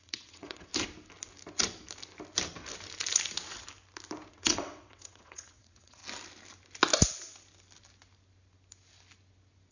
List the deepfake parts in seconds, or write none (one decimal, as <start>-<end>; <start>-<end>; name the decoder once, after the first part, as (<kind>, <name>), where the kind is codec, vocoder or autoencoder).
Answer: 0.0-0.7 (vocoder, WaveNeXt); 4.3-6.0